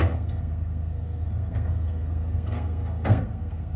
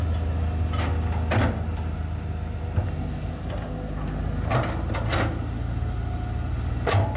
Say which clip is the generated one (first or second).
first